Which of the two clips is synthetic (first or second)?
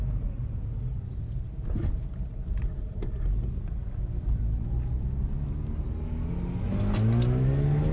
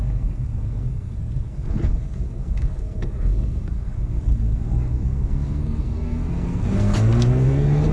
second